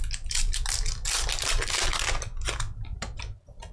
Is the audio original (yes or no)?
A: yes